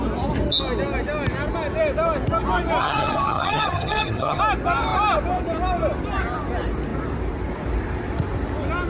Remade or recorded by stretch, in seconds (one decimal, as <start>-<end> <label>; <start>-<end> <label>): 0.0-2.8 recorded; 2.8-4.4 remade; 4.4-8.9 recorded